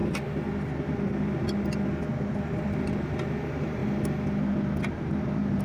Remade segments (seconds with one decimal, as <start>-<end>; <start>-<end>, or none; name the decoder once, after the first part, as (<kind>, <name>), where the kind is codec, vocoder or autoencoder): 3.4-3.8 (vocoder, BigVGAN v2); 4.9-5.6